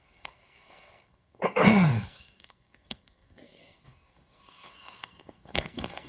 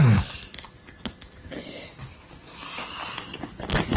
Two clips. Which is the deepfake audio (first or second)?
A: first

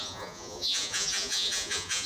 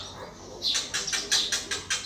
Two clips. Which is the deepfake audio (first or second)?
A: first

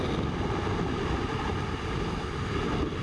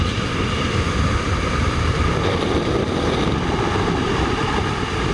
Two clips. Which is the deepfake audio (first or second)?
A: second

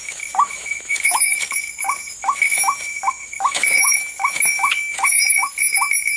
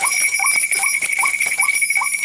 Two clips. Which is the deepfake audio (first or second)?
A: first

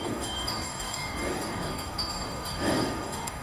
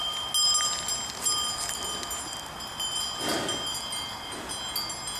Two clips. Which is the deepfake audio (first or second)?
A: first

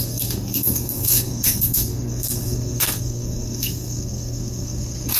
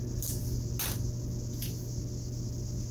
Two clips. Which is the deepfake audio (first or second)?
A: first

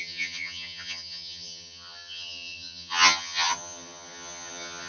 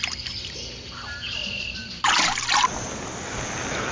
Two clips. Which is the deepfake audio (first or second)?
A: first